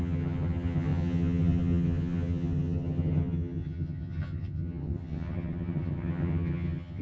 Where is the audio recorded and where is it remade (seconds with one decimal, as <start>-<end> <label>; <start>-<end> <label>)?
0.0-7.0 remade